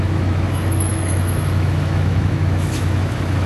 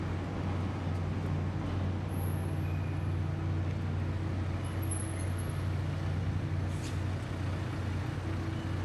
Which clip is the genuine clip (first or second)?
second